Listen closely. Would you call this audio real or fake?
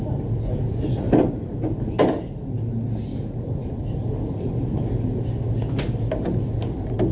real